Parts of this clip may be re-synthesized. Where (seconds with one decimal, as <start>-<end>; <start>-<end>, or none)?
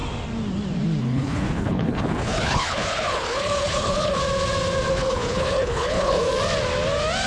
1.0-4.2; 4.9-6.3